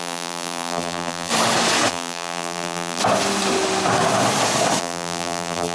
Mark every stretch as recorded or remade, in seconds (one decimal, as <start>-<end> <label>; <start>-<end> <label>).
0.0-1.3 remade; 1.3-1.9 recorded; 1.9-3.0 remade; 3.0-4.8 recorded; 4.8-5.7 remade